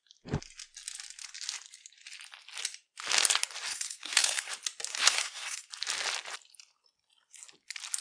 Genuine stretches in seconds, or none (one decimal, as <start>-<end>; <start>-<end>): 0.0-3.7; 4.5-4.9; 5.7-8.0